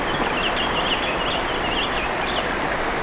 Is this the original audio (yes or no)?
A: yes